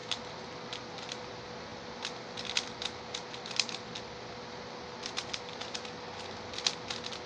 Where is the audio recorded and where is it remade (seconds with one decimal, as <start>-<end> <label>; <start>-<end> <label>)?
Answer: 0.0-7.3 recorded